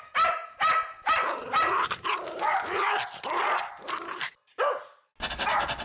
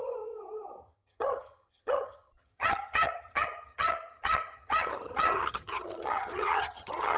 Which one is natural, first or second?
first